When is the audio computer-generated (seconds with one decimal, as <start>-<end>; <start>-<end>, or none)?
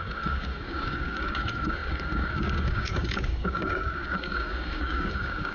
0.0-5.5